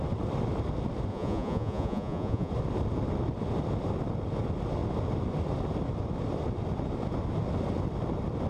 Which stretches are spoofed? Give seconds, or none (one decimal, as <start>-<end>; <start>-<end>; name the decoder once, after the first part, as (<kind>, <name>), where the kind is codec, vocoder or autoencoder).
1.1-2.5 (vocoder, Vocos)